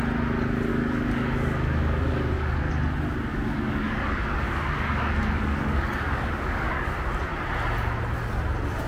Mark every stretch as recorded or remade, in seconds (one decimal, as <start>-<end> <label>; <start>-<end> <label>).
0.0-0.7 recorded; 0.7-2.7 remade; 2.7-3.3 recorded; 3.3-6.9 remade; 6.9-8.9 recorded